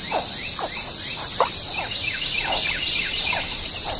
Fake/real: real